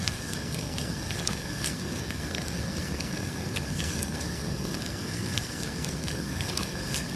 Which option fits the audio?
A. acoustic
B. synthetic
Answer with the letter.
B